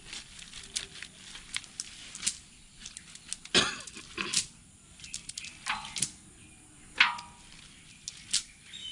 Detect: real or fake real